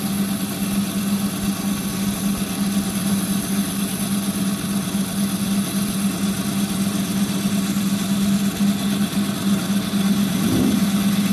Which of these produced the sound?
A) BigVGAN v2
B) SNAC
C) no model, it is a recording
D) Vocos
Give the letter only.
C